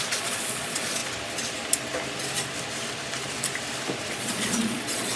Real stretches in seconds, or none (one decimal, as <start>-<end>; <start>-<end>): 1.0-4.1